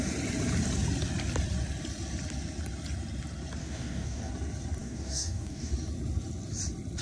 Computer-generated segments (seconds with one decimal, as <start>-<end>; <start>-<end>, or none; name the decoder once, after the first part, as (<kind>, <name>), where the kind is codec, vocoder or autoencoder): 3.6-4.3 (codec, DAC); 4.8-5.7